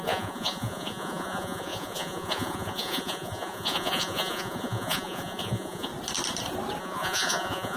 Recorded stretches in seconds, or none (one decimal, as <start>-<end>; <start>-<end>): 5.9-6.8